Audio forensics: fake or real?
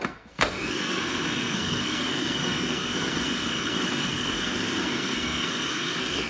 fake